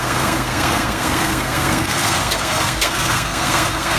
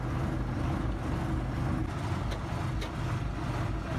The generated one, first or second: first